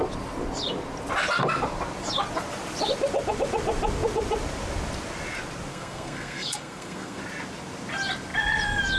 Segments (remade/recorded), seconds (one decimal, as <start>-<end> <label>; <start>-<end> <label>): 0.0-5.7 recorded; 5.7-7.2 remade; 7.2-9.0 recorded